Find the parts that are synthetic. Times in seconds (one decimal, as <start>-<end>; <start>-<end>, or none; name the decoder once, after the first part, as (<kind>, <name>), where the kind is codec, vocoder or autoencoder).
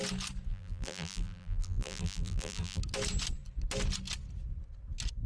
0.5-2.8 (vocoder, BigVGAN v2)